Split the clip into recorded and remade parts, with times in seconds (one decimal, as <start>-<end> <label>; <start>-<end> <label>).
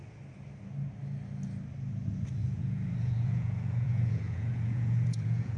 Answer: 0.0-2.4 recorded; 2.4-5.6 remade